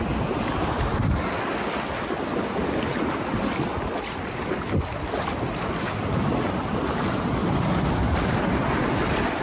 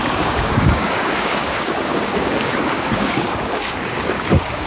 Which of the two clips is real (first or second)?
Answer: first